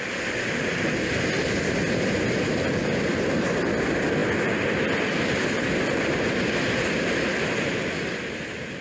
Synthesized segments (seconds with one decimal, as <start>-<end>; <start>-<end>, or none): none